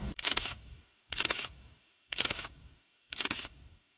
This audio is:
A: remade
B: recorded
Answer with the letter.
A